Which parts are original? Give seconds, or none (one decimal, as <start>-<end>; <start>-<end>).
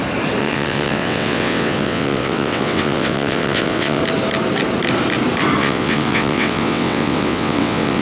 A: 0.0-0.4; 4.0-5.6